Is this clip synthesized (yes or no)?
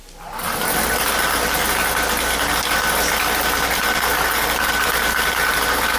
no